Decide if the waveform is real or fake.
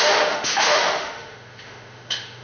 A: fake